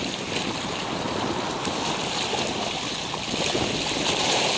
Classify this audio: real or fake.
real